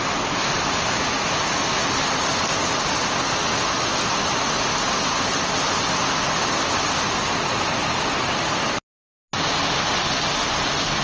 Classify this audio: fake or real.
real